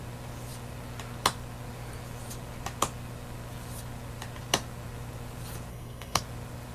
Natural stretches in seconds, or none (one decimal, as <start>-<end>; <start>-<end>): 0.0-5.7; 6.2-6.7